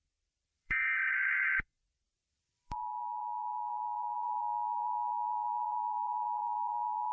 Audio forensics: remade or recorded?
remade